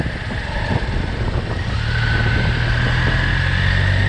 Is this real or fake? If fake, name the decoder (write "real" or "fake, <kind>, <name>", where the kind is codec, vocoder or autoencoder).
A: real